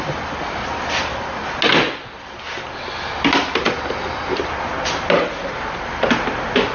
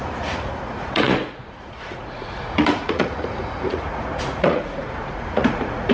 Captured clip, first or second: first